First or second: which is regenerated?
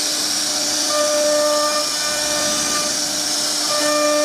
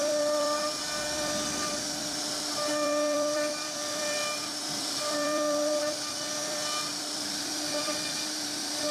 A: second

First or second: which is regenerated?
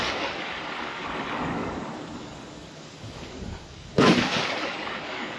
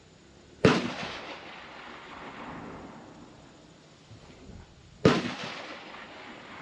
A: first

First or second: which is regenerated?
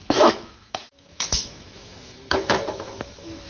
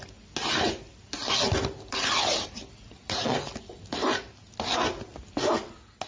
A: first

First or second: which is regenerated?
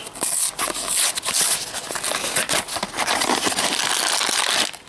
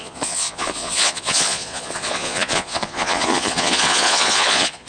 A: second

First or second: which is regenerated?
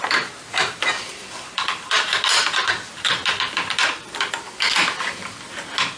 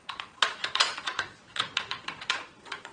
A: second